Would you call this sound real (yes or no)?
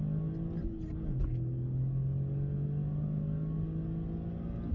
yes